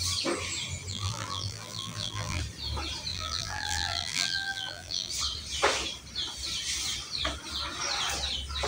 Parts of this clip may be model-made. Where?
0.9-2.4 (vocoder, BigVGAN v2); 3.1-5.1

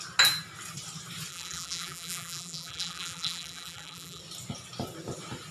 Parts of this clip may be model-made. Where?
1.3-4.2 (vocoder, BigVGAN v2)

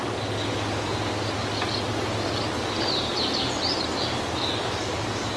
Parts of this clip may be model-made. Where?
none

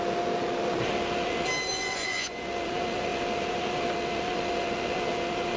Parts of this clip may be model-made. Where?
1.7-2.4 (vocoder, Vocos)

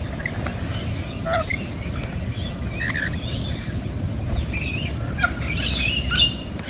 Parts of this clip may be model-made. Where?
none

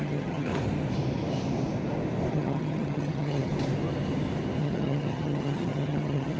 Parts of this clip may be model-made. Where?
0.0-0.5 (vocoder, HiFi-GAN); 2.3-3.5; 4.6-6.4

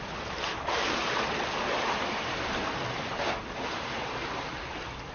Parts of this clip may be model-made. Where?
none